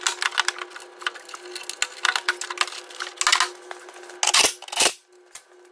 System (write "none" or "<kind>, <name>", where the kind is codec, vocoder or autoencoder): none